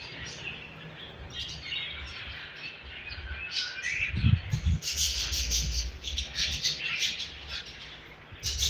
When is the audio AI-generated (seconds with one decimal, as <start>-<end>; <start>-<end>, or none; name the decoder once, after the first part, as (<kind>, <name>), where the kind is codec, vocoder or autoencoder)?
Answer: 4.7-6.8 (codec, SNAC)